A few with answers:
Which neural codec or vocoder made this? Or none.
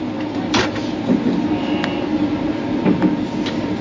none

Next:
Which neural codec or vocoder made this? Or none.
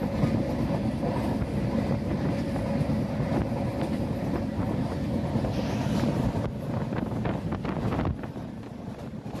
none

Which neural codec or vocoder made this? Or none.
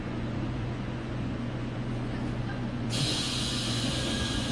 vocoder, Vocos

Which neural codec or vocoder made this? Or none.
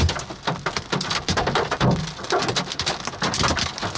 none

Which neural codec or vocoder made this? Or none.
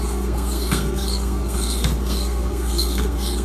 codec, SNAC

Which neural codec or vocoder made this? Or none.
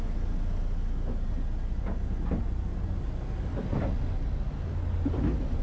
none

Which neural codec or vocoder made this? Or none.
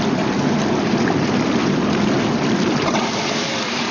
none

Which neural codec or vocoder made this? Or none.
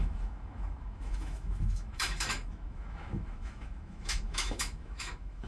autoencoder, DAC-VAE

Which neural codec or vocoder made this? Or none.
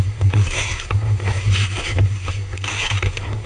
codec, SNAC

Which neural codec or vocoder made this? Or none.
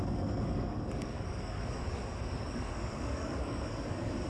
codec, DAC